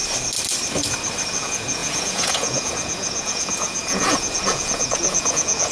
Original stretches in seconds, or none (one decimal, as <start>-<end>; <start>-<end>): 0.0-1.4